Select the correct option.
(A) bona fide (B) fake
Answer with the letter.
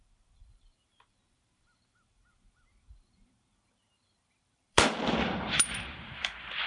B